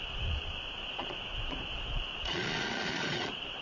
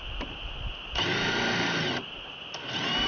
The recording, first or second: second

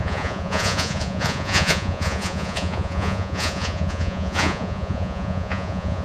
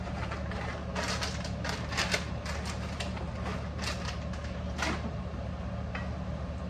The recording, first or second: second